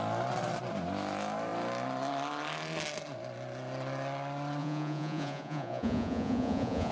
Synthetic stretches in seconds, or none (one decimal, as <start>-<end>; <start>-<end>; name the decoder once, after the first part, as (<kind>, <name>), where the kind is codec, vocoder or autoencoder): 4.6-6.9 (vocoder, Vocos)